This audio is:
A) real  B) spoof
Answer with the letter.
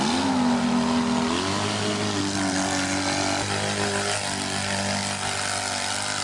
A